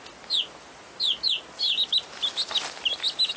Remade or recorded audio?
recorded